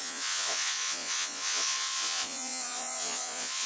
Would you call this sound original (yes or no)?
no